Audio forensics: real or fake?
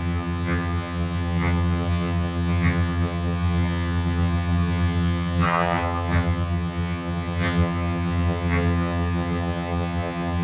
fake